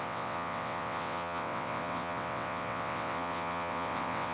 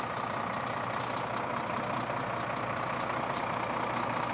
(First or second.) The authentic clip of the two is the second